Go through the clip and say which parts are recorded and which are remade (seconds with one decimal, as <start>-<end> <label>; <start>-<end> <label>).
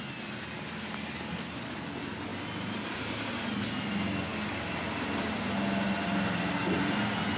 0.0-7.4 recorded